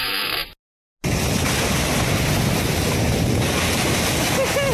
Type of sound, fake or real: real